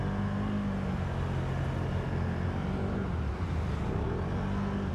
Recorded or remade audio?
recorded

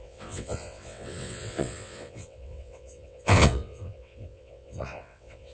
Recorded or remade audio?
remade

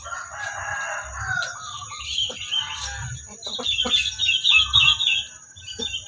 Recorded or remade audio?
recorded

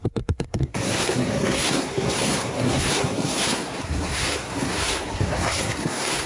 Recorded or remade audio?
remade